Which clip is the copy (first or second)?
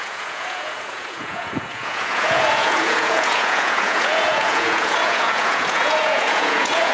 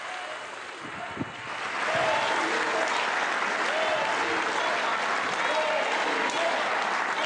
first